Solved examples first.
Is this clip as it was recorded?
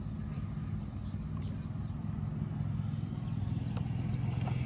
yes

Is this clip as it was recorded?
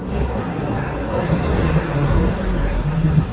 no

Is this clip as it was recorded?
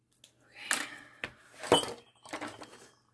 yes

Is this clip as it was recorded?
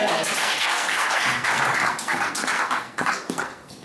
no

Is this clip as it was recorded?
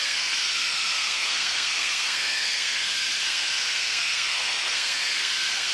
no